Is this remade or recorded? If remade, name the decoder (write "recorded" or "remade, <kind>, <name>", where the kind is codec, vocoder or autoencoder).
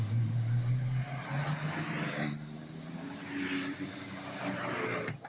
recorded